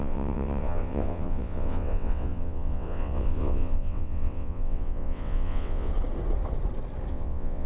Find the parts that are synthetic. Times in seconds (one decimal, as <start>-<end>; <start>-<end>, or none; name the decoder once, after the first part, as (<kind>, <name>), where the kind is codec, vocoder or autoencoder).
0.0-5.9 (vocoder, WaveNeXt); 7.1-7.7